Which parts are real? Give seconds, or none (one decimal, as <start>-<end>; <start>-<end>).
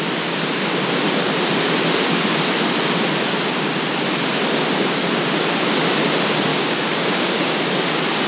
0.0-6.5; 7.6-8.3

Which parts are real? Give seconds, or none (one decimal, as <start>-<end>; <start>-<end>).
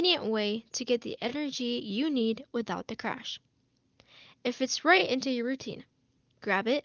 0.0-2.5; 3.4-5.0; 5.8-6.8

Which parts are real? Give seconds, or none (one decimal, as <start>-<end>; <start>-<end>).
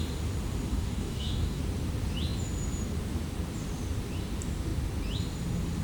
0.0-0.7; 1.6-5.8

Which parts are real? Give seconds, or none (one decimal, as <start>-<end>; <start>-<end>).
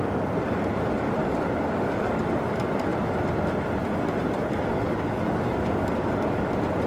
0.0-1.2; 2.2-4.4; 6.5-6.9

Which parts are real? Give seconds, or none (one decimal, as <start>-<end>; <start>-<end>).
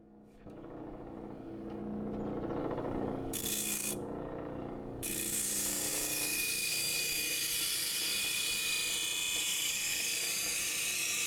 1.8-2.6; 8.7-9.4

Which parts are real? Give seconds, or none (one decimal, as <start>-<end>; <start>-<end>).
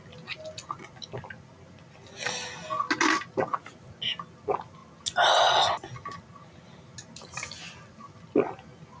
0.0-9.0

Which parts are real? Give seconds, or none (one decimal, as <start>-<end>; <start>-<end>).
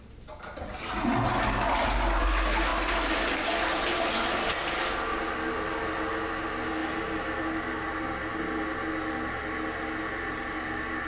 0.0-11.1